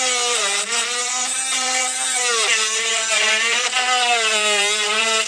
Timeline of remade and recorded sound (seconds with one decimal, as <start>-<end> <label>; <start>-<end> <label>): 0.0-5.3 remade